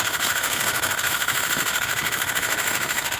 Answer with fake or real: fake